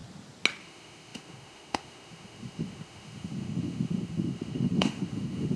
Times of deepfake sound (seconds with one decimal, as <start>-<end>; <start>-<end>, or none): 0.6-5.6